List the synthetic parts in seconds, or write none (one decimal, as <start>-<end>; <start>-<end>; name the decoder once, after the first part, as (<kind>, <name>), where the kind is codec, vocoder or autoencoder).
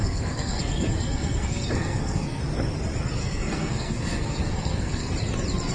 0.0-2.4 (codec, SNAC); 3.2-5.1